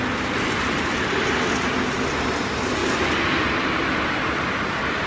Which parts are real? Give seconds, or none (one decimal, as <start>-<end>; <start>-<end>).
0.0-5.1